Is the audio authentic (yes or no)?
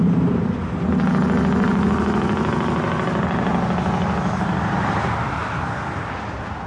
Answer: yes